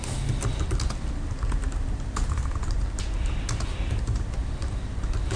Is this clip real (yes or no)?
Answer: yes